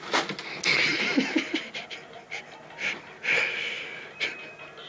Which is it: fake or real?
real